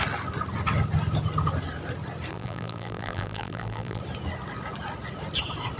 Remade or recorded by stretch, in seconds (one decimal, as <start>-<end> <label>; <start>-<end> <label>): 0.0-2.3 recorded; 2.3-4.0 remade; 4.0-5.8 recorded